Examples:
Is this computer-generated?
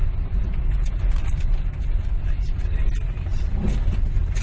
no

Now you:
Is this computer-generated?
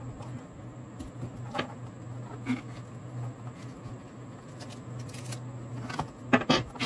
no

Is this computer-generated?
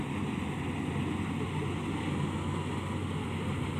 no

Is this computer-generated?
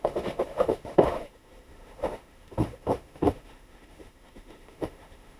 yes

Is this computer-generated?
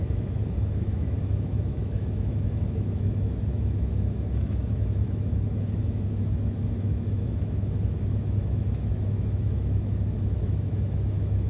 yes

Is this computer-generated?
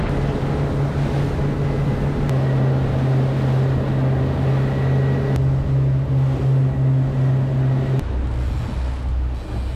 no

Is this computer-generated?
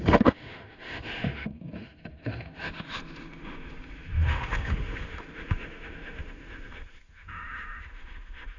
yes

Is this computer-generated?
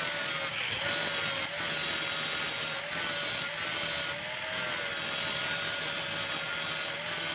no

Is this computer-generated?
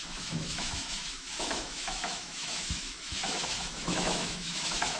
yes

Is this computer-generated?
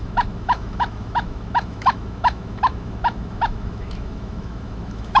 yes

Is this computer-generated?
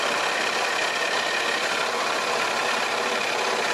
no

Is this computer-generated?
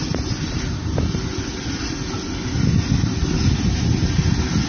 no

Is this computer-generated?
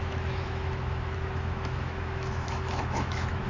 yes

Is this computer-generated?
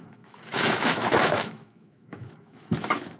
yes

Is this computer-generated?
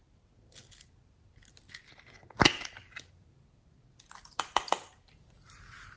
no